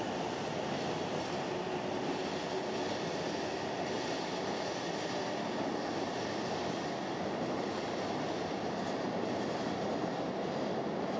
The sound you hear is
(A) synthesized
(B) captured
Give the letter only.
B